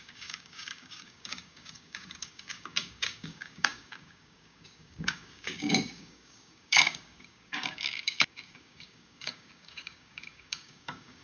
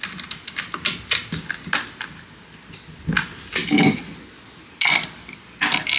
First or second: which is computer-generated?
first